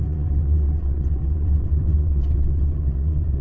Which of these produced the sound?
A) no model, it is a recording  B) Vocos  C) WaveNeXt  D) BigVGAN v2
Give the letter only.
C